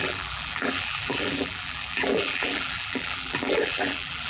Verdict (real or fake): fake